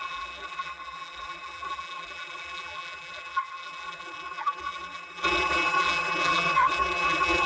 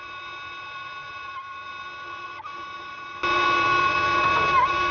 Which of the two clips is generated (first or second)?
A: first